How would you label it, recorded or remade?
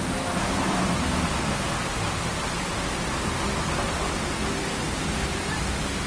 recorded